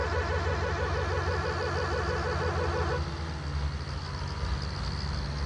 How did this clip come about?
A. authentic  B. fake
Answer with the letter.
A